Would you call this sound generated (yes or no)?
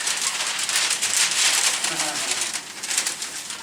no